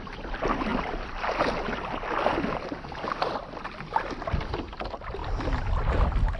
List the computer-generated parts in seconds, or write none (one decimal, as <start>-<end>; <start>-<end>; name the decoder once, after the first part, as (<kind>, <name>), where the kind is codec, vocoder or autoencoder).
none